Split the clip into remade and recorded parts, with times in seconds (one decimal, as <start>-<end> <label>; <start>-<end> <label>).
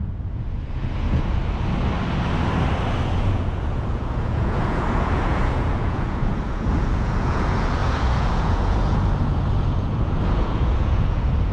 0.0-1.4 remade; 1.4-3.1 recorded; 3.1-11.5 remade